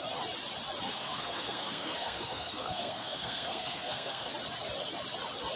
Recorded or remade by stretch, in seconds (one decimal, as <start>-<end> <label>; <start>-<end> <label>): 0.0-0.9 recorded; 0.9-4.3 remade; 4.3-5.6 recorded